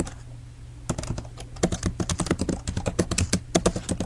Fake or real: real